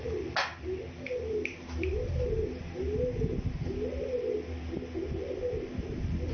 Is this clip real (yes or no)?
yes